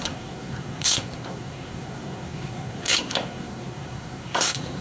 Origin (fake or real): fake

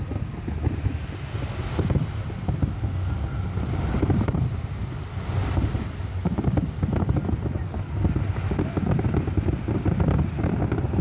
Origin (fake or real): real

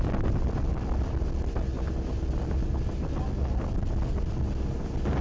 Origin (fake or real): real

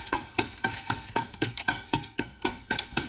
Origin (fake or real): fake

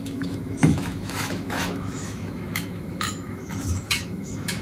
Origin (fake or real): fake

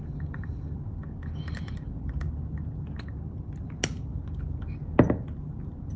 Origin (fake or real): real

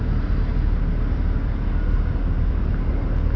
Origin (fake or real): real